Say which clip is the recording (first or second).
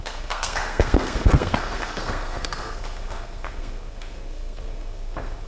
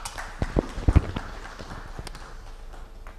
second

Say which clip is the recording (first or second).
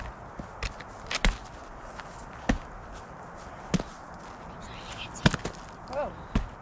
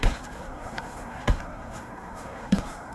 first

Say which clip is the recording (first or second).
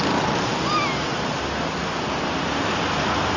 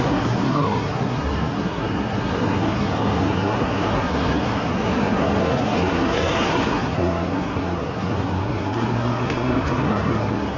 first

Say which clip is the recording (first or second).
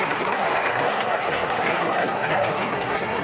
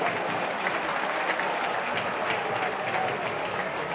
second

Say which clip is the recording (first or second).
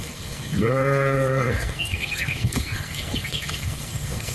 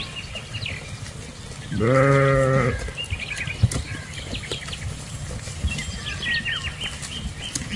second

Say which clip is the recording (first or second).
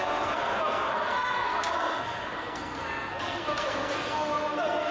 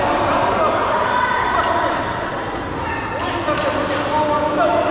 second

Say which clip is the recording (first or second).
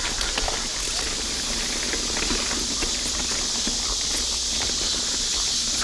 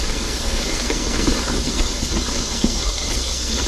first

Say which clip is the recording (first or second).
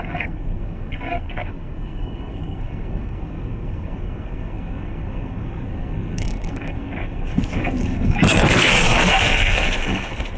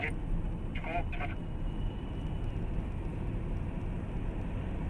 second